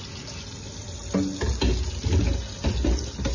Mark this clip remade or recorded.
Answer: recorded